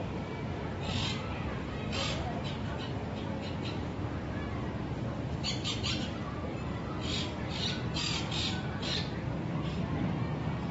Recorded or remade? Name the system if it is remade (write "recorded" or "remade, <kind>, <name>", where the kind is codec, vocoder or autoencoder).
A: recorded